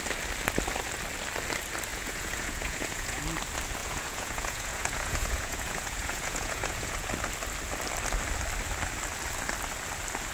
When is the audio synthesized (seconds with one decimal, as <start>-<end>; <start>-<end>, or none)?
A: 1.9-3.2; 3.8-7.1